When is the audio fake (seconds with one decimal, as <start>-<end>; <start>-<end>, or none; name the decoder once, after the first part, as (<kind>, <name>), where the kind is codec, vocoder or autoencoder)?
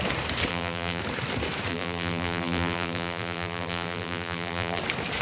0.5-1.0 (vocoder, BigVGAN v2); 1.7-4.8